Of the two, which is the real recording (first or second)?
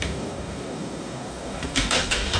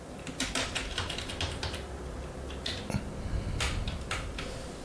second